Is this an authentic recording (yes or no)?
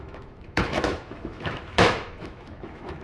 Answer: no